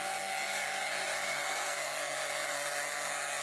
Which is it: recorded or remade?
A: remade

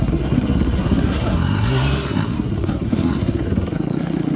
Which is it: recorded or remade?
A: remade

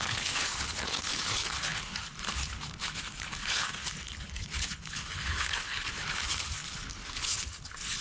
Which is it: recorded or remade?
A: remade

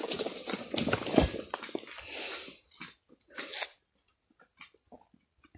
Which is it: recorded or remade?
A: recorded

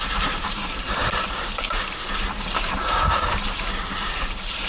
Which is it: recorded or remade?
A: remade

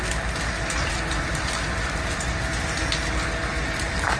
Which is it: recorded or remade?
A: recorded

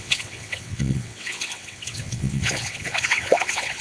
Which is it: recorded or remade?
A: remade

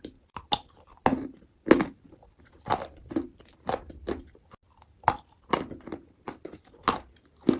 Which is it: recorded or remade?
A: recorded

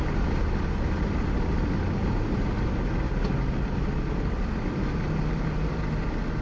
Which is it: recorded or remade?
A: recorded